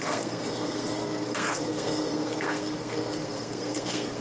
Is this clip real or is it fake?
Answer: fake